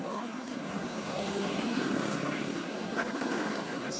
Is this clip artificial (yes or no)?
yes